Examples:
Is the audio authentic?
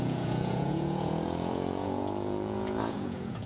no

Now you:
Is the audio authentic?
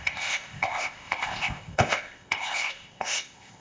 no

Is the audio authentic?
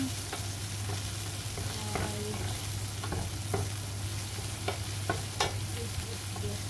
yes